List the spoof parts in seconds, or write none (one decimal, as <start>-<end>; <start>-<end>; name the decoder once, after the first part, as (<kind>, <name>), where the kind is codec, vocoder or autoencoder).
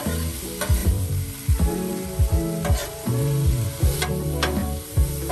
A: 0.8-1.9 (vocoder, BigVGAN v2); 2.8-3.7; 4.6-5.3